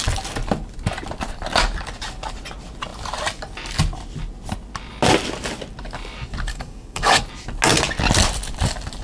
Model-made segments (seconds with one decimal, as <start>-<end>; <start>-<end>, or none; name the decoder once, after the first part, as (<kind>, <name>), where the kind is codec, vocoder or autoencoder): 6.5-7.2 (codec, DAC)